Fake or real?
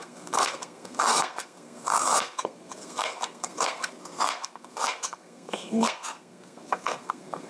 fake